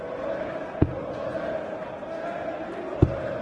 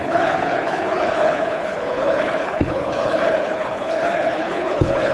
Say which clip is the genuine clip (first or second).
first